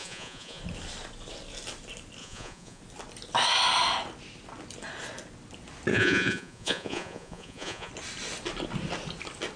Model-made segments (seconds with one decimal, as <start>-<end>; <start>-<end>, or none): 0.0-0.6; 2.2-2.8; 5.9-7.9